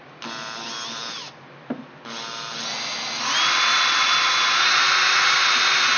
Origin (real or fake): real